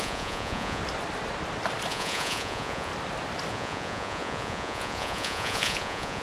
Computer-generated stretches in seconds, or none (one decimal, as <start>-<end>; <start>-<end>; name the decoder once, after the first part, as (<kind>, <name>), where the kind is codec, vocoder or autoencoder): 0.0-0.8 (vocoder, Vocos); 1.9-2.9; 3.5-6.2